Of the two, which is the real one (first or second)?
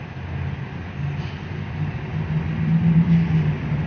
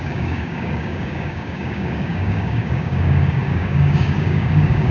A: first